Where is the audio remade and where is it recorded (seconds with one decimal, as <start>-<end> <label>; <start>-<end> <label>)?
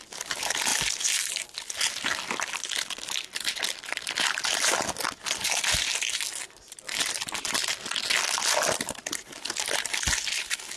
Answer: 0.0-10.8 recorded